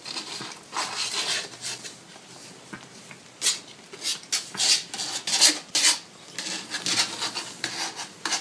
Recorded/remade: recorded